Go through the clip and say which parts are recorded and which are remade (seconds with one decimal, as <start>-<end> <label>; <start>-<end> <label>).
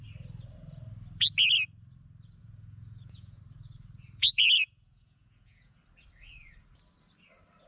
0.0-2.4 recorded; 2.4-3.4 remade; 3.4-4.2 recorded; 4.2-5.8 remade; 5.8-7.7 recorded